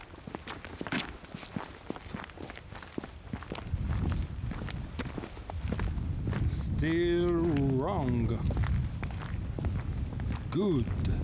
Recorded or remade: recorded